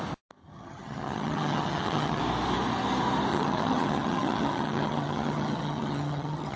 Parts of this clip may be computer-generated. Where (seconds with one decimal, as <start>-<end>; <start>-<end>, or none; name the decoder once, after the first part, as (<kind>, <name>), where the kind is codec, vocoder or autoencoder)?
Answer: 0.4-2.2 (vocoder, HiFi-GAN); 3.3-6.6